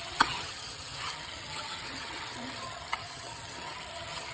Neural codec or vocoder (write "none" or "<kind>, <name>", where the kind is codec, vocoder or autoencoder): vocoder, HiFi-GAN